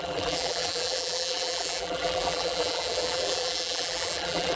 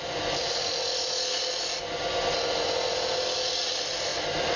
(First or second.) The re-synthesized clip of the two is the first